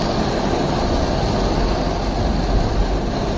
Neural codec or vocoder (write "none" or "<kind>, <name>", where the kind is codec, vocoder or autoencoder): none